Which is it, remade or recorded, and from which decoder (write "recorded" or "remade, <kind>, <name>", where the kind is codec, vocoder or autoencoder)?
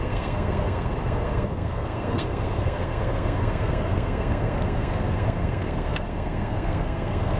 remade, codec, SNAC